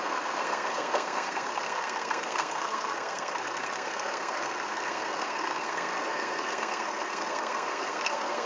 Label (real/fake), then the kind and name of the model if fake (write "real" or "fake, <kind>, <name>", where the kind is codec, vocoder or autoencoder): fake, codec, SNAC